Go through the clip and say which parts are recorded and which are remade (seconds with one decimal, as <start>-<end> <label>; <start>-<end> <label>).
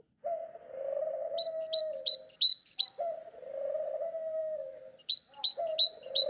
0.0-6.3 recorded